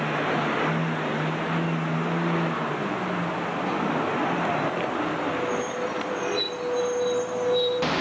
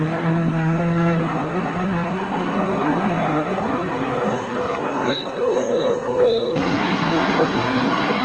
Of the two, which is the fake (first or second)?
second